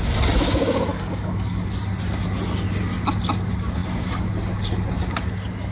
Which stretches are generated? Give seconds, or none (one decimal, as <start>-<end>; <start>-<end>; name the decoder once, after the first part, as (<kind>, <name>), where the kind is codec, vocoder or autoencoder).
0.9-1.6 (codec, DAC)

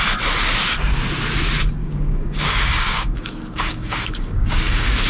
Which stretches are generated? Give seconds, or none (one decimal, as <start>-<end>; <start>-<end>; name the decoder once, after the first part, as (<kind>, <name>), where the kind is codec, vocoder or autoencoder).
1.8-5.1 (codec, DAC)

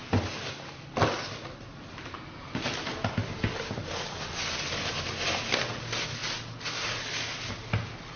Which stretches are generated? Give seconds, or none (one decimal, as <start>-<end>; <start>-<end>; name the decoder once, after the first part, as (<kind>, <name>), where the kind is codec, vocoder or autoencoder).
none

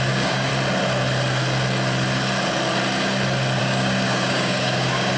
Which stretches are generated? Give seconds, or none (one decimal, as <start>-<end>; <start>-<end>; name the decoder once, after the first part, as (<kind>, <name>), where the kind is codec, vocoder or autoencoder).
0.0-0.5 (codec, DAC); 3.6-5.2

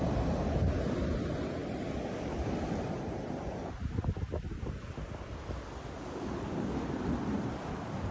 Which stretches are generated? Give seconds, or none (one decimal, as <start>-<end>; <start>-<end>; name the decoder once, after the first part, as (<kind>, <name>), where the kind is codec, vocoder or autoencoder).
none

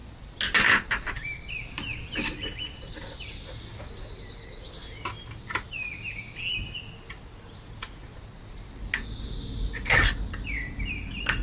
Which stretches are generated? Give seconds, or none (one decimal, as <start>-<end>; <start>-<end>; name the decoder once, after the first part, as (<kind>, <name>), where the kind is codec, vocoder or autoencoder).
none

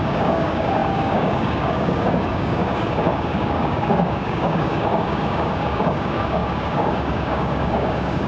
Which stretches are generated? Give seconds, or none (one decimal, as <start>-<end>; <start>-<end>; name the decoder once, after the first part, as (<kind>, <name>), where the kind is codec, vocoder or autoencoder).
0.0-8.3 (codec, DAC)

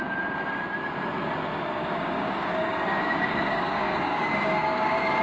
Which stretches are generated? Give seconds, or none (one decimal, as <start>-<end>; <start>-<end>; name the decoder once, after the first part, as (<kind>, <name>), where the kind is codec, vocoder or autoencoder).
1.8-5.2 (codec, DAC)